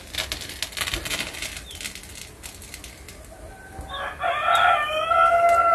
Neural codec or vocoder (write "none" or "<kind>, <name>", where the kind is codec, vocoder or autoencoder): none